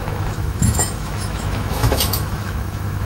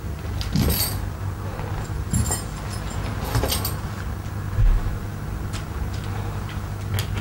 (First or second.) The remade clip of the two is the first